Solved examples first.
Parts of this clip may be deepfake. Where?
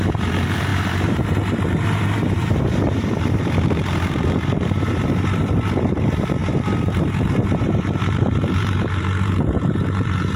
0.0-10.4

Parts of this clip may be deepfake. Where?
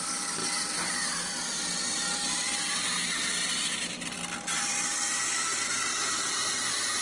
none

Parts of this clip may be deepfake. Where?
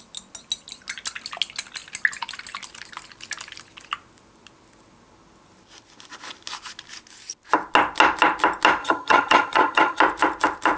8.8-10.0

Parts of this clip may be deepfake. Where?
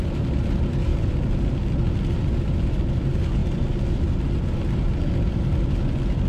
none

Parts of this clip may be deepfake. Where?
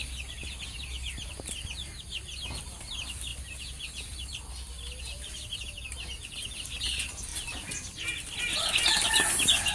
3.3-5.0; 7.3-8.4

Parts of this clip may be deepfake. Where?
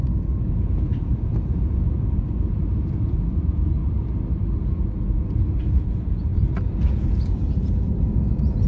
0.0-3.8; 4.6-6.3; 6.9-8.7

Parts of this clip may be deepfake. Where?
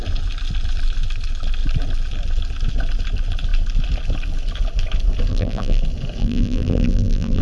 5.3-5.8; 6.2-7.4